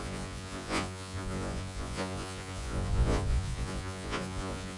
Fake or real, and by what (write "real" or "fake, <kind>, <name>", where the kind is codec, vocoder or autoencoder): fake, vocoder, Vocos